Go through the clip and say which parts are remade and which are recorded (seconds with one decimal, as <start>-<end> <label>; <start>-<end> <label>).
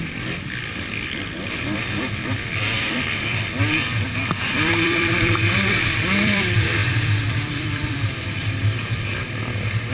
0.0-9.1 remade; 9.1-9.9 recorded